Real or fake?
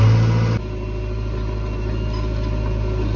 real